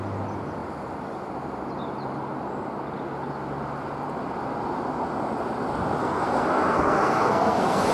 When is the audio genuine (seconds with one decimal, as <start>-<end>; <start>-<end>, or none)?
0.0-6.0